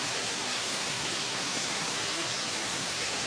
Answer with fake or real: fake